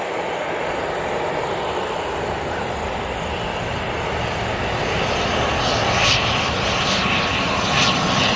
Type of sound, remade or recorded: recorded